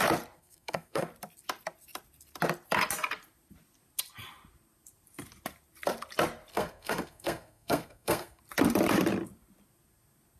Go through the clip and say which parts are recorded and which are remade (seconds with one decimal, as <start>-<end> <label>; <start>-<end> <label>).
0.0-0.4 recorded; 0.4-1.1 remade; 1.1-6.5 recorded; 6.5-8.4 remade; 8.4-10.4 recorded